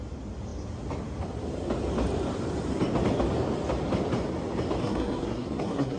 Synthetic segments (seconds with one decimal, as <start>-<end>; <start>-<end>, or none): 4.8-6.0